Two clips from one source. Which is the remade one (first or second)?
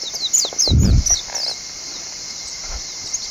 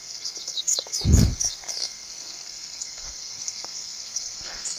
second